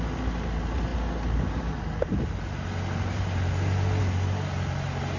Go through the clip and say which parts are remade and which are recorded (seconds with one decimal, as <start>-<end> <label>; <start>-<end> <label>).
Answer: 0.0-5.2 recorded

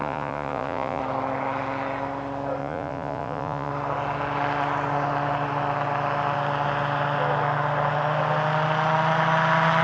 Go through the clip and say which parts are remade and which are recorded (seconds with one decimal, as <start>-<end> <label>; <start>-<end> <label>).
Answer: 0.0-1.0 remade; 1.0-2.6 recorded; 2.6-3.7 remade; 3.7-9.8 recorded